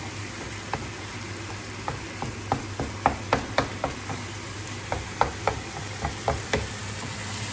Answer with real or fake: real